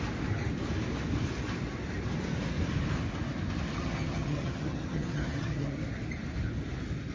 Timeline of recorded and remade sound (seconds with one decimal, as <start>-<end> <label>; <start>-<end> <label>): 0.0-3.7 recorded; 3.7-5.8 remade; 5.8-7.1 recorded